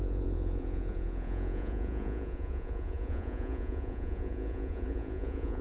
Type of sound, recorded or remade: remade